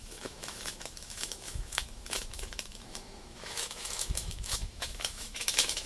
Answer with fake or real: fake